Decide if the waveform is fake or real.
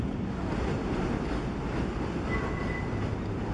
real